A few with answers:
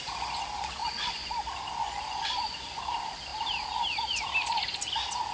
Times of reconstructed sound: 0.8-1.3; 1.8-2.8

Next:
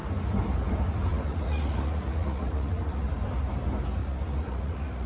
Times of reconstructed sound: 1.1-3.1; 4.0-5.1

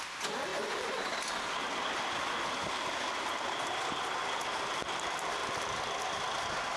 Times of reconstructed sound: none

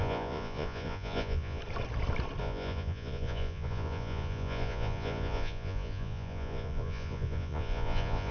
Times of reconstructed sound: 0.0-1.6; 2.4-8.3

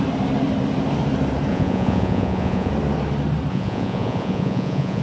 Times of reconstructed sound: 1.5-2.7; 3.5-5.0

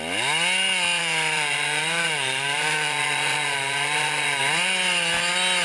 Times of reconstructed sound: 1.0-4.4

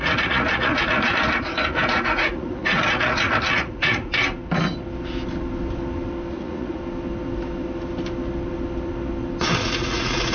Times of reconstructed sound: 0.0-4.1; 6.3-6.8; 9.6-10.3

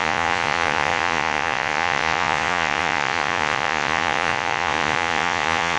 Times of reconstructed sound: 0.0-5.8